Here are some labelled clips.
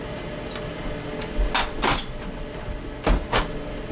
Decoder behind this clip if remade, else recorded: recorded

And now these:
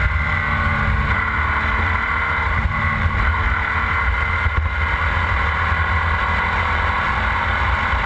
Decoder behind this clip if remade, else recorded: recorded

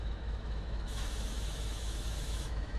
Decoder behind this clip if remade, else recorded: remade, autoencoder, DAC-VAE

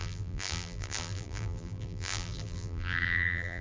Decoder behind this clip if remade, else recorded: remade, vocoder, BigVGAN v2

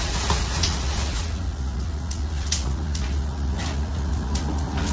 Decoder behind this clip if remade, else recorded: remade, vocoder, Vocos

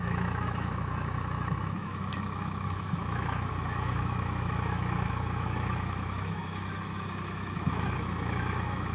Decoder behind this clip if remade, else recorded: remade, autoencoder, DAC-VAE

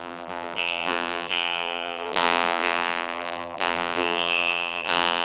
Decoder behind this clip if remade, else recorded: remade, vocoder, BigVGAN v2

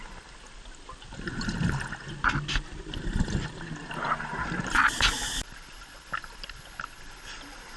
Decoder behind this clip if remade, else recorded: recorded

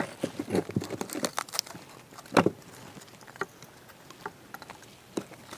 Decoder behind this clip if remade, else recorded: recorded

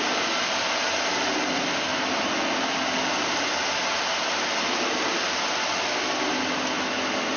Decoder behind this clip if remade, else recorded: recorded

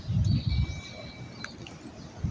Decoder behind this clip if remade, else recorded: recorded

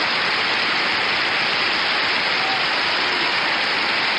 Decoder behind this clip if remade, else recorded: recorded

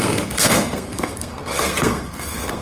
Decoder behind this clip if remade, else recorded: remade, codec, SNAC